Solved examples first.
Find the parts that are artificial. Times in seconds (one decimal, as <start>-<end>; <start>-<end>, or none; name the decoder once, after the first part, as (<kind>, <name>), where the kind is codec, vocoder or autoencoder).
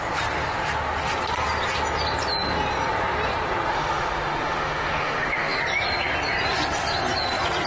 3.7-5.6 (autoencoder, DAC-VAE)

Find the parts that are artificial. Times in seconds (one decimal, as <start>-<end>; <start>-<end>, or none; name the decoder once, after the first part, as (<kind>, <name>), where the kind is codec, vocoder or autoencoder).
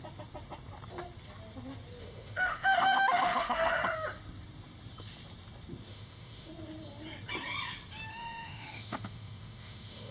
2.0-3.8 (autoencoder, DAC-VAE); 5.9-6.5; 8.1-10.1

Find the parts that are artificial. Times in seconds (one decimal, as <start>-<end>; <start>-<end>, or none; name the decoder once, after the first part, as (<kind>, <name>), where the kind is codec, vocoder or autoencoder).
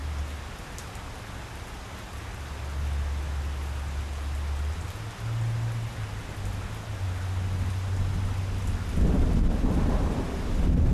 none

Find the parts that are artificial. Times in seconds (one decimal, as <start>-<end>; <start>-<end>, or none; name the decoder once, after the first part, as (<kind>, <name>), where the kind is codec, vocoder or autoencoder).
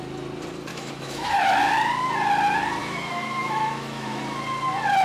0.7-1.6 (autoencoder, DAC-VAE); 2.8-4.2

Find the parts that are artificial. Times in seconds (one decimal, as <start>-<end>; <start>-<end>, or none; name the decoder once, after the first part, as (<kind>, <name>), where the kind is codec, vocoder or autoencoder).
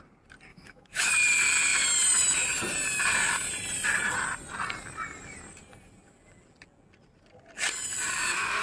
0.5-1.1 (autoencoder, DAC-VAE)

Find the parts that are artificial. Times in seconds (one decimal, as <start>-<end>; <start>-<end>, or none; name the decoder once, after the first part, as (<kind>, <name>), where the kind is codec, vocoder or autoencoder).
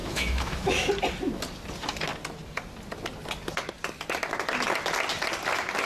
0.0-0.9 (autoencoder, DAC-VAE)